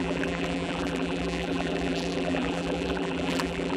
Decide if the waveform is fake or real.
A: fake